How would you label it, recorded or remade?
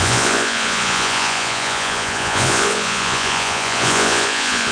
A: remade